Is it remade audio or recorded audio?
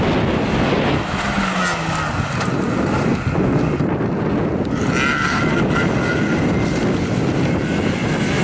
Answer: recorded